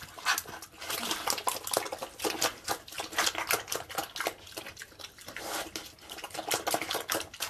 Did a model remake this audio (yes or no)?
no